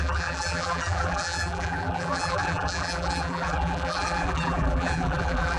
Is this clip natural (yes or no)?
no